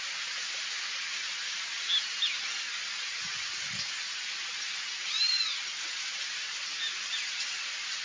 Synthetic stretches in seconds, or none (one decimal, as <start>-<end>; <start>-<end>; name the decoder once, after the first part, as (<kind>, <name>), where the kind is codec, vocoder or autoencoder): none